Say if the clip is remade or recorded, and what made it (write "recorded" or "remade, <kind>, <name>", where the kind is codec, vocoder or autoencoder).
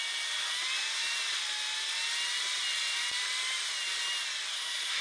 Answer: recorded